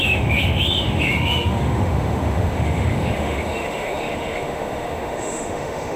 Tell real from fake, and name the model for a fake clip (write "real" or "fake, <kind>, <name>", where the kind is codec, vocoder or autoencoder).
fake, autoencoder, DAC-VAE